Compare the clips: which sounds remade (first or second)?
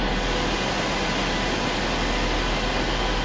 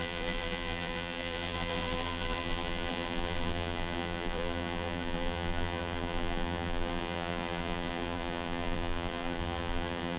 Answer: second